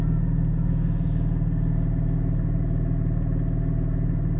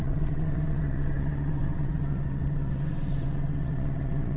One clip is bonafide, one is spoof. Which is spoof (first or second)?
second